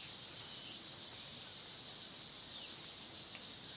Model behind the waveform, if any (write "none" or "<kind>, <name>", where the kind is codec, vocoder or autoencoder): none